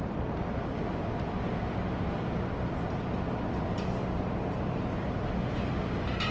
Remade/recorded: recorded